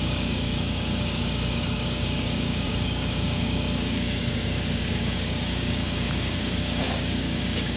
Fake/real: fake